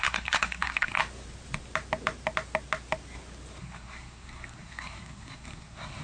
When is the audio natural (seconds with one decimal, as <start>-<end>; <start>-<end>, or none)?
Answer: 1.0-3.6